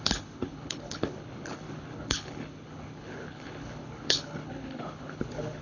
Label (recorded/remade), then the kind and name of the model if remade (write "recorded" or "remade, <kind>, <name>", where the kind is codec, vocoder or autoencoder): remade, codec, HILCodec